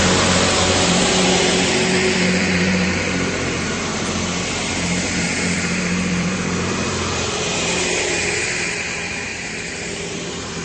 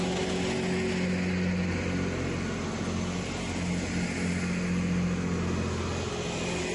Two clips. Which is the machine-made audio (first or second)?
first